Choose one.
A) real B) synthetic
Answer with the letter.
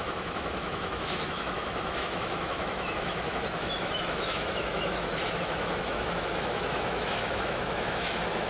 B